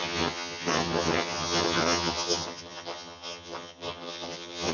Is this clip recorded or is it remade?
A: remade